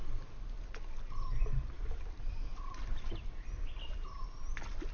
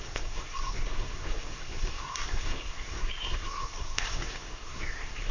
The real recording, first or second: first